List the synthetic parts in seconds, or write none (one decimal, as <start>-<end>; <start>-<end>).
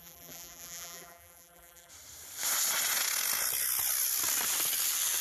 0.0-1.9